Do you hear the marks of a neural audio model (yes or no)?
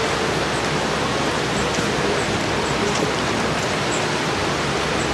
no